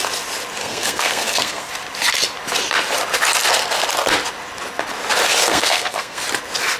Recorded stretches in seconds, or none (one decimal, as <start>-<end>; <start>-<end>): 0.0-0.6; 1.7-5.5; 6.2-6.8

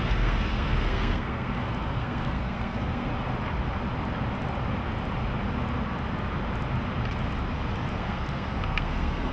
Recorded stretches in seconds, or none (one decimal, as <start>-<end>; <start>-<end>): 3.1-7.9

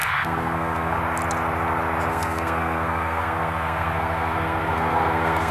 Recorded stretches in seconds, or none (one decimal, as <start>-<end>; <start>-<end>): 1.0-2.1

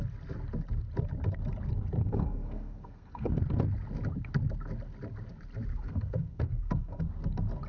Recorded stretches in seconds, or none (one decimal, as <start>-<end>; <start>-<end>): 0.0-2.0; 3.4-5.7; 7.0-7.7

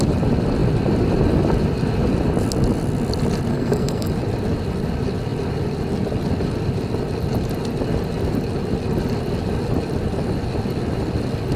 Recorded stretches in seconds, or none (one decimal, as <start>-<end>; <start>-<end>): 0.0-3.5; 4.1-11.6

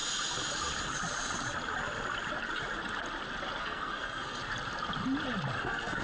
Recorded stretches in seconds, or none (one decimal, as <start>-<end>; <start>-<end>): 0.0-3.6; 4.4-5.6

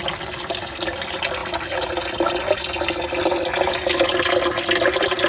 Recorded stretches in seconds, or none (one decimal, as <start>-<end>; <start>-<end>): 0.0-5.3